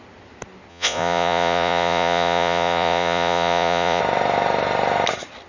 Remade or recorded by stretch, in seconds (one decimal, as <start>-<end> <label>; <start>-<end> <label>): 0.0-0.7 recorded; 0.7-4.0 remade; 4.0-5.5 recorded